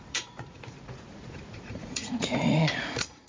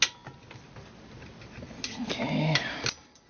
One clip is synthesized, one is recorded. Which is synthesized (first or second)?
first